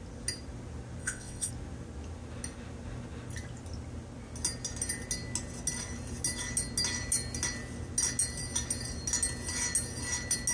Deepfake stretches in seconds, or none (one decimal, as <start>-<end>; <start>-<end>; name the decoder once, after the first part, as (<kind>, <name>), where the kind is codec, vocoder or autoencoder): 1.0-1.5 (vocoder, WaveNeXt)